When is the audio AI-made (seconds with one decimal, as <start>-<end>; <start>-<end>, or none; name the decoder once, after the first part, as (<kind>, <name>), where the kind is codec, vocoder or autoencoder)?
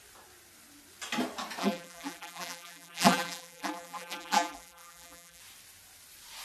1.6-5.4 (vocoder, BigVGAN v2)